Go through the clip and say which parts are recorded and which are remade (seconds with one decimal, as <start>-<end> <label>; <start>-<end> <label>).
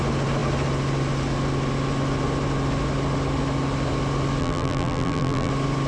0.0-4.4 recorded; 4.4-5.5 remade; 5.5-5.9 recorded